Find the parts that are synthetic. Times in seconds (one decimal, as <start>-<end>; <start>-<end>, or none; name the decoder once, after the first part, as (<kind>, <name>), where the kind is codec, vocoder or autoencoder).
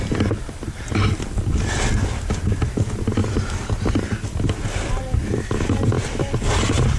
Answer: none